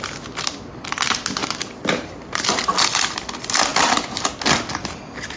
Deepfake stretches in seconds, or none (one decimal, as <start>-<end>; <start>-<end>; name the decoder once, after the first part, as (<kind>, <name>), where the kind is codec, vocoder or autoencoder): 1.4-2.7 (vocoder, BigVGAN v2); 3.7-4.3